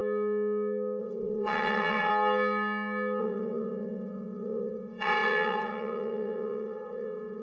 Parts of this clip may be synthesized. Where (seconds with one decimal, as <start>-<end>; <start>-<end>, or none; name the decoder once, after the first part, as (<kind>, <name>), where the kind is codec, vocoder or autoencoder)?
1.0-2.1 (vocoder, WaveNeXt); 3.2-7.4